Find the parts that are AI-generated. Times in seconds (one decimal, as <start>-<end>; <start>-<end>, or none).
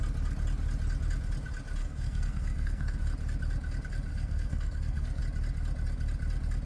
1.8-3.0; 4.1-5.2